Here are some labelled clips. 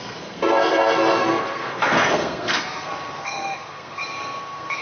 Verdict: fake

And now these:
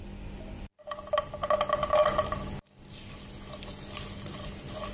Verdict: real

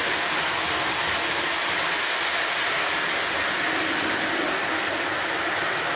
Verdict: real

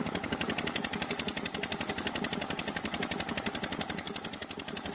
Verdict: real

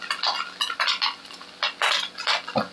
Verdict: real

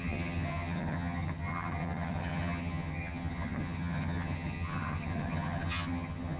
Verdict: fake